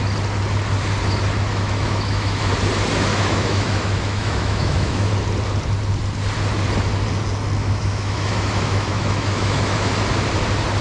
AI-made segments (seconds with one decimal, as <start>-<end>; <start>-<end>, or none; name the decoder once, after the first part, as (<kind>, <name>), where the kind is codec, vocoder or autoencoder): 1.5-2.5 (autoencoder, DAC-VAE); 3.1-5.1; 7.6-9.9